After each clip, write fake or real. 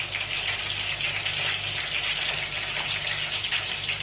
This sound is real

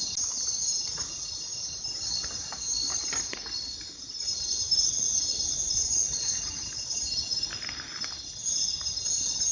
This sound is real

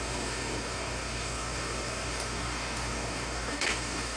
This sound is fake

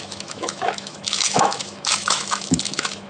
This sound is fake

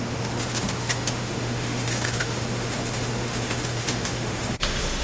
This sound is fake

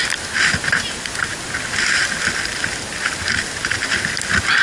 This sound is real